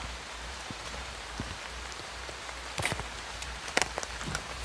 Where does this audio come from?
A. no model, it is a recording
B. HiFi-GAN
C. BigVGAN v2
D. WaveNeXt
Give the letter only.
C